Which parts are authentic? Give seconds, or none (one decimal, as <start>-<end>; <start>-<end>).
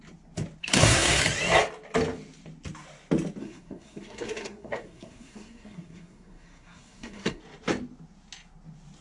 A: 0.0-0.6; 1.2-3.4; 7.4-9.0